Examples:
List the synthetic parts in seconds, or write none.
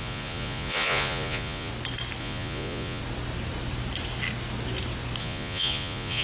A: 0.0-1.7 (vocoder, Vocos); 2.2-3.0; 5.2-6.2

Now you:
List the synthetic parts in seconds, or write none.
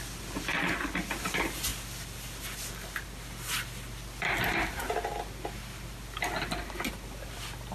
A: none